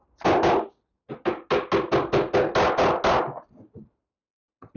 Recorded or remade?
recorded